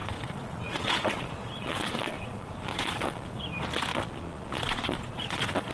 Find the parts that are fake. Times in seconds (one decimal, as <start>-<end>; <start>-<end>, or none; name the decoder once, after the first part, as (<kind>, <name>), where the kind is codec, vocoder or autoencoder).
0.0-3.4 (vocoder, Vocos); 3.9-5.7